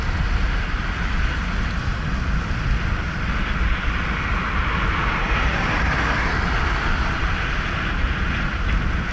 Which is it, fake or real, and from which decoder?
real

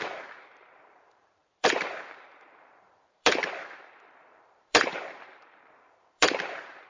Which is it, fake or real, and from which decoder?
fake, vocoder, BigVGAN v2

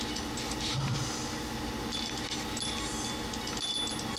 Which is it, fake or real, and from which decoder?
real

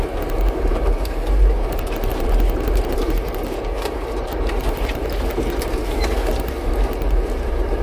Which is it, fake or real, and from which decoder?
fake, vocoder, BigVGAN v2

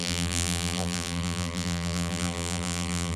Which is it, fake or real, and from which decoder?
fake, vocoder, BigVGAN v2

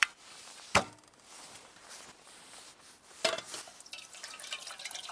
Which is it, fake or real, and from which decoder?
fake, vocoder, BigVGAN v2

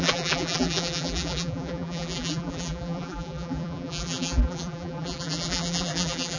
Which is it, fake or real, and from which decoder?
fake, vocoder, BigVGAN v2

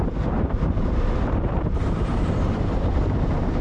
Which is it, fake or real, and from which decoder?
fake, vocoder, BigVGAN v2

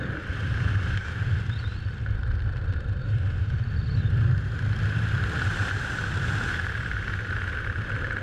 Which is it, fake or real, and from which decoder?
real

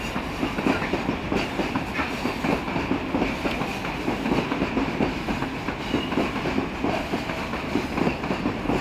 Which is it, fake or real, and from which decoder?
real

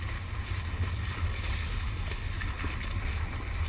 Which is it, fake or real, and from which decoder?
real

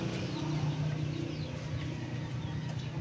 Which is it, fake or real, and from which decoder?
real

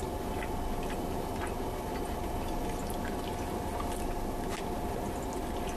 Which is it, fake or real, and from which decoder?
real